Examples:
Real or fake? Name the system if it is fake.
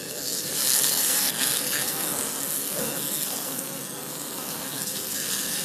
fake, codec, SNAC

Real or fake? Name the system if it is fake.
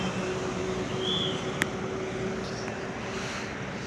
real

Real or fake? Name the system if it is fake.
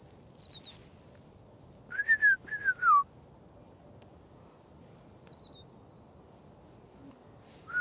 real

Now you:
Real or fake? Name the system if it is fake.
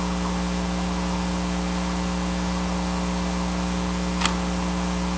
real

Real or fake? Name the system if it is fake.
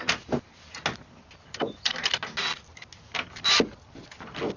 real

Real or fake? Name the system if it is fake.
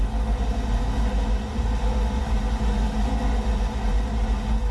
real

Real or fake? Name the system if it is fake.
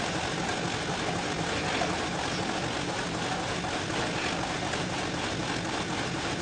real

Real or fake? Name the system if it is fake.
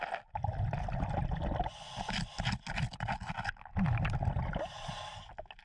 real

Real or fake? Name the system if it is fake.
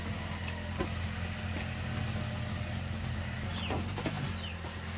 real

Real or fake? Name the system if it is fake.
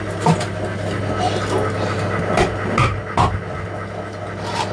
real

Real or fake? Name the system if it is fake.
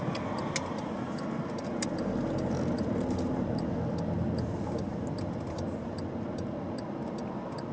real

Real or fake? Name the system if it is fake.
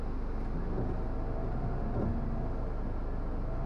real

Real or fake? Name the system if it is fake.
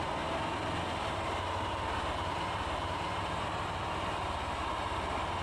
real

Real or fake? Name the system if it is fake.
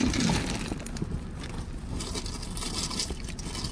real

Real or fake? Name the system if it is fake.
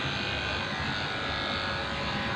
real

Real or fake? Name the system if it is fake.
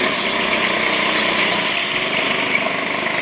real